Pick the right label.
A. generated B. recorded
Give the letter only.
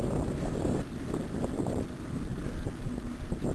B